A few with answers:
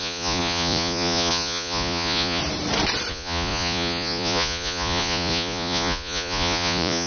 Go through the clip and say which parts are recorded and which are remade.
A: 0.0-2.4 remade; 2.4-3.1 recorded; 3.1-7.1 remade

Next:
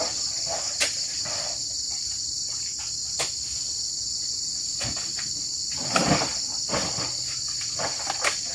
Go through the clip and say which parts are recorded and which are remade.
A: 0.0-8.5 recorded

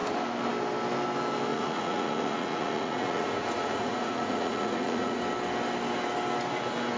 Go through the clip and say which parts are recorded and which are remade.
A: 0.0-1.5 recorded; 1.5-5.2 remade; 5.2-7.0 recorded

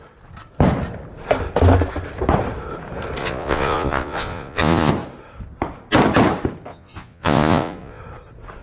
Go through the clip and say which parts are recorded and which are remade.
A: 0.0-3.2 recorded; 3.2-4.9 remade; 4.9-6.7 recorded; 6.7-8.0 remade; 8.0-8.6 recorded

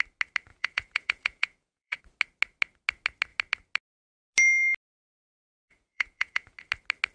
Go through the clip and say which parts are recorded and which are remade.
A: 0.0-0.5 recorded; 0.5-2.0 remade; 2.0-5.5 recorded; 5.5-6.6 remade; 6.6-7.1 recorded